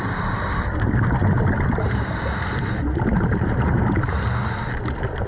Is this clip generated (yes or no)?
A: no